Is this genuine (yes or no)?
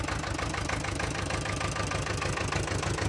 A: yes